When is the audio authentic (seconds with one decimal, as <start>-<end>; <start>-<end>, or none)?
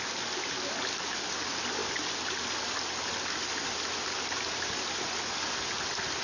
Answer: 0.0-6.2